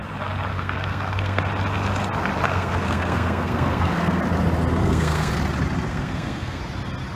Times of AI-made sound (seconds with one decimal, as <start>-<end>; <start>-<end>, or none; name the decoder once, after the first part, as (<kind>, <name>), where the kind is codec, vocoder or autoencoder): 0.5-1.4 (codec, SNAC); 2.5-4.2; 4.8-5.3; 5.9-6.6